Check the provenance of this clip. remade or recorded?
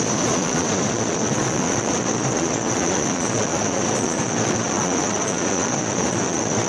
remade